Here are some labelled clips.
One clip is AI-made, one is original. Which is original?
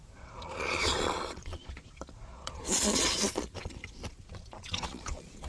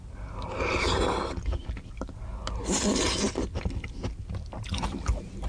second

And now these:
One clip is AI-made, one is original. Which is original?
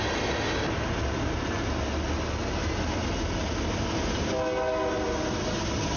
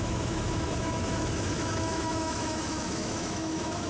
first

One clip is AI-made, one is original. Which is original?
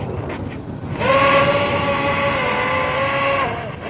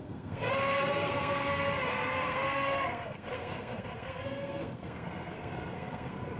first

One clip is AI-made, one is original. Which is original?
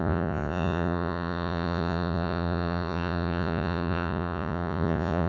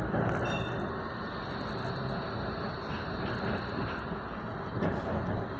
second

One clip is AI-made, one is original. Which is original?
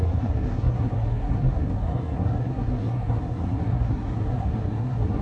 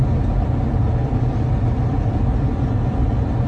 second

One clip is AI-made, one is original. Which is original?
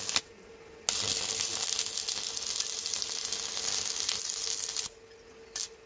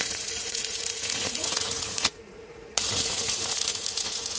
first